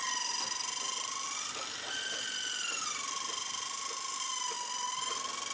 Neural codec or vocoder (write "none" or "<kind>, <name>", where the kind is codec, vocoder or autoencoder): none